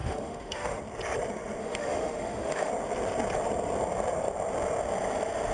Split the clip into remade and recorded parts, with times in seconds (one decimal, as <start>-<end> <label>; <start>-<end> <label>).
0.0-0.8 remade; 0.8-1.6 recorded; 1.6-2.7 remade; 2.7-5.5 recorded